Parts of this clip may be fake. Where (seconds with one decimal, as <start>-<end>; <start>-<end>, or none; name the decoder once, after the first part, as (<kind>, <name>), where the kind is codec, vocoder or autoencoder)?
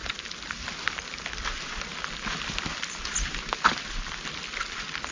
none